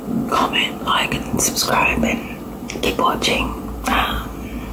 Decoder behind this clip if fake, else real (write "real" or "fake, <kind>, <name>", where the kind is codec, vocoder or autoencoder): real